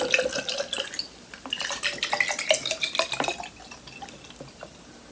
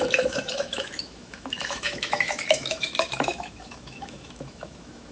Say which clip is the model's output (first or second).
second